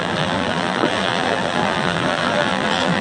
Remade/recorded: remade